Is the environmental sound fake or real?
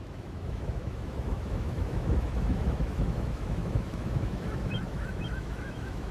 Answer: fake